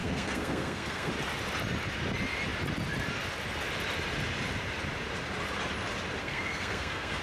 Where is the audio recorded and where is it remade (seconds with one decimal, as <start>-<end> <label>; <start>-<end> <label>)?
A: 0.0-1.1 remade; 1.1-6.2 recorded; 6.2-7.2 remade